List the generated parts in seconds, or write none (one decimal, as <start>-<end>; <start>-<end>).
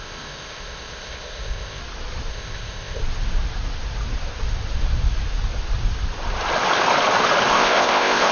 0.0-1.8; 2.3-3.0; 7.5-8.3